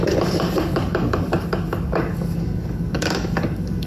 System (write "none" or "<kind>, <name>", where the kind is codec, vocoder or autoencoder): codec, DAC